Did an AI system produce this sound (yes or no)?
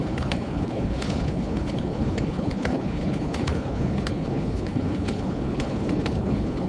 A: yes